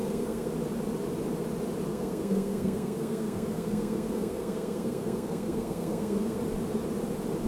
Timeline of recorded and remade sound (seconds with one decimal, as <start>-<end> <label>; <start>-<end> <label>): 0.0-0.5 remade; 0.5-1.9 recorded; 1.9-6.4 remade; 6.4-7.5 recorded